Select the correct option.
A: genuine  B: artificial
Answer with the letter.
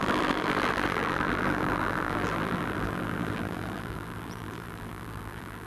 B